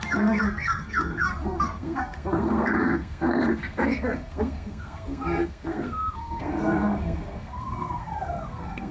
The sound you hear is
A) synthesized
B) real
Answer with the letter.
A